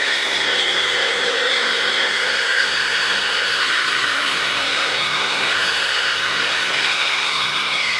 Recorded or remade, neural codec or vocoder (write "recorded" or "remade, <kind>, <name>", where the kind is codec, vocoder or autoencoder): remade, codec, SNAC